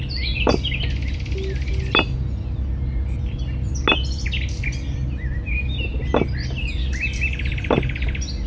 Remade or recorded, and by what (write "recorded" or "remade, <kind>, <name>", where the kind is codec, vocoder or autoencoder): recorded